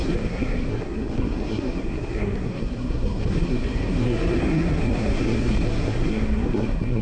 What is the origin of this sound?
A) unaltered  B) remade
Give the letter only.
B